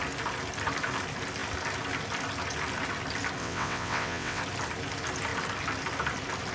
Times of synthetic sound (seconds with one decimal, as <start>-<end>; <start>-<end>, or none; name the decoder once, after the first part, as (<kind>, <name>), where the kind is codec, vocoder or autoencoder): 3.4-4.4 (vocoder, WaveNeXt)